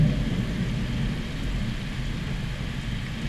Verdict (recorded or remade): recorded